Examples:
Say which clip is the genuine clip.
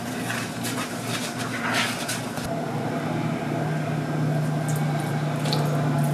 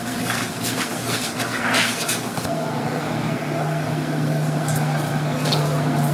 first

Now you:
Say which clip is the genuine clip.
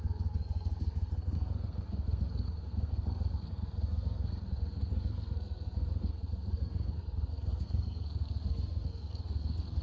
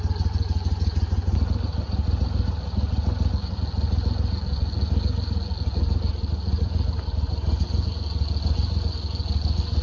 second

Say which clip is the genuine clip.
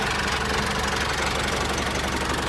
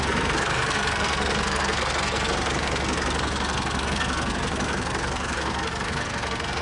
first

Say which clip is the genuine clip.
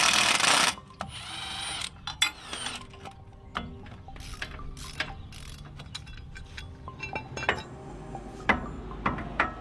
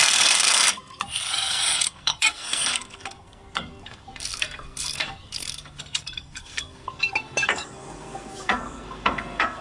first